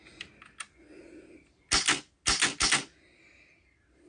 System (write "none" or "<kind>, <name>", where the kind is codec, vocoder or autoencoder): none